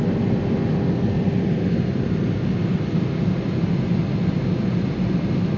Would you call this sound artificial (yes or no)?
no